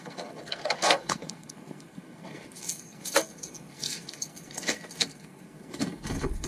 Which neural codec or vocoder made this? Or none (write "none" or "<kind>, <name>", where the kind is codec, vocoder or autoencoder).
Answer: codec, SNAC